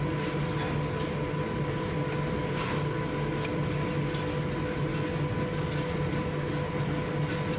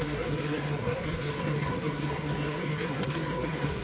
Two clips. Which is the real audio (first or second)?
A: first